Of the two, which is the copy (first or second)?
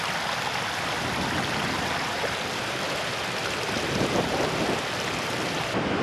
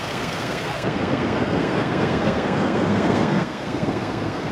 second